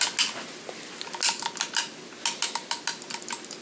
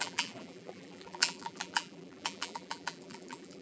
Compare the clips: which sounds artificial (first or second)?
second